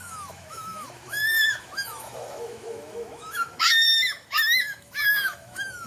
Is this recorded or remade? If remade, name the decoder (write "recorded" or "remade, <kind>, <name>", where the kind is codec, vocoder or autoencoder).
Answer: remade, autoencoder, DAC-VAE